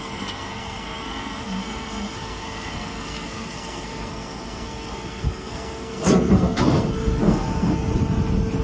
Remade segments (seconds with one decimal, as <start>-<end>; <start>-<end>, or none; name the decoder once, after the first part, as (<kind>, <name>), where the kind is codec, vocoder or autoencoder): 0.0-7.9 (codec, SNAC)